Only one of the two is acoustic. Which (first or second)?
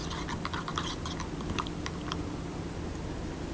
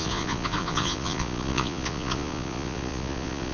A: first